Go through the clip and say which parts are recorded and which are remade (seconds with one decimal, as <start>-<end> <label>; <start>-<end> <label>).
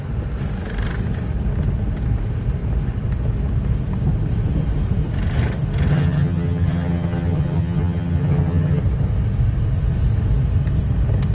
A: 0.0-5.9 recorded; 5.9-8.8 remade; 8.8-11.3 recorded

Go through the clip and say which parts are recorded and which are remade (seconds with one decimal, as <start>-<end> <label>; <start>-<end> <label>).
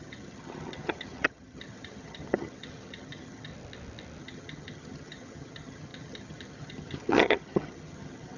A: 0.0-3.5 remade; 3.5-4.2 recorded; 4.2-8.4 remade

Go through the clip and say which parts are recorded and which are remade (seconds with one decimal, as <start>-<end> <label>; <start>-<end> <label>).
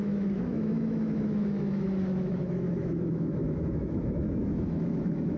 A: 0.0-5.4 remade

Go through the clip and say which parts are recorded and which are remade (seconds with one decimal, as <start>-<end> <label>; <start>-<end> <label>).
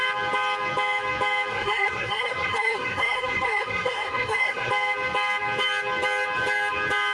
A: 0.0-1.5 recorded; 1.5-4.7 remade; 4.7-7.1 recorded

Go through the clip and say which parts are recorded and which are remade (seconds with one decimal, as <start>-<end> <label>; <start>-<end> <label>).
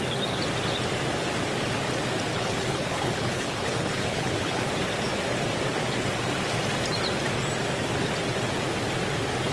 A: 0.0-2.3 recorded; 2.3-4.7 remade; 4.7-9.5 recorded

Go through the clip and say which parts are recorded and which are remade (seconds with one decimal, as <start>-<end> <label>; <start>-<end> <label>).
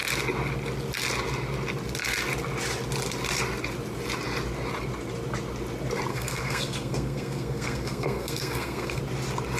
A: 0.0-6.1 recorded; 6.1-9.0 remade; 9.0-9.6 recorded